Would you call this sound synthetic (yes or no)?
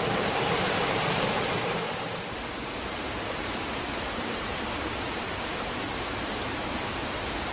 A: yes